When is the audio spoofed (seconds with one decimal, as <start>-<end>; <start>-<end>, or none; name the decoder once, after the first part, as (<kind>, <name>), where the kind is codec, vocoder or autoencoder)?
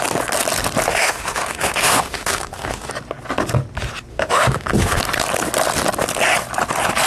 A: 0.9-2.9 (autoencoder, DAC-VAE); 4.1-5.0